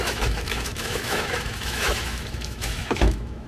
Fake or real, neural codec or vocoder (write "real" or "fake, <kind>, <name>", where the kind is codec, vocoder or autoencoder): fake, autoencoder, DAC-VAE